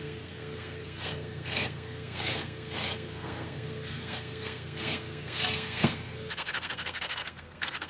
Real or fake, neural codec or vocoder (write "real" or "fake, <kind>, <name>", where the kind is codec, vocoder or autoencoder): fake, codec, SNAC